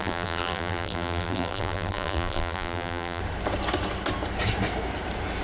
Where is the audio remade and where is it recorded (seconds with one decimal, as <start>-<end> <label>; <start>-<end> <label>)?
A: 0.0-3.2 remade; 3.2-5.4 recorded